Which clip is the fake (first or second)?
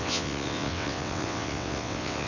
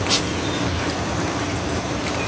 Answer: first